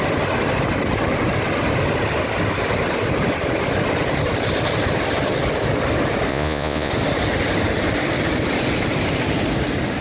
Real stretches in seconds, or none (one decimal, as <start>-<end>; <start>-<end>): 0.0-6.3; 6.9-10.0